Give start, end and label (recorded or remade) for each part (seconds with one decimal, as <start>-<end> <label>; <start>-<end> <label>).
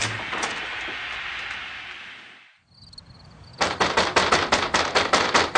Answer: 0.0-5.6 recorded